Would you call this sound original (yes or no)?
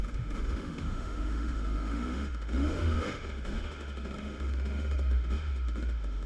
no